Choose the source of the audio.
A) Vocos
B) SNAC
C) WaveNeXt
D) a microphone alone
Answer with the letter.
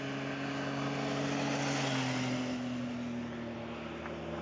D